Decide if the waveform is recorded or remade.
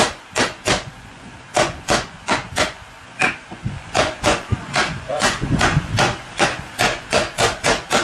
remade